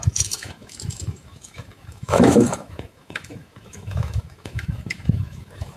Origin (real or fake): fake